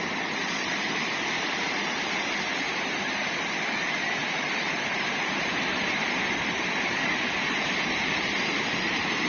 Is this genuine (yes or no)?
no